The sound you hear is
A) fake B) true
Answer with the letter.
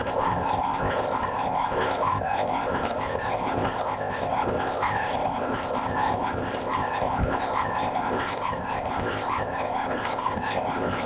A